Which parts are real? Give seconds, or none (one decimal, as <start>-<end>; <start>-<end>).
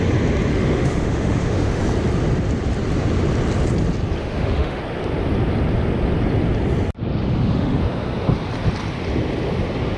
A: 0.0-0.5; 1.8-4.2; 4.8-7.2; 7.8-10.0